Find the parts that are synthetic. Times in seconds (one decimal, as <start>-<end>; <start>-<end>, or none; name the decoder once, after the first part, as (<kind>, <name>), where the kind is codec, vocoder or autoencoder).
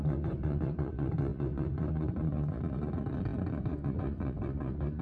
0.0-5.0 (vocoder, Vocos)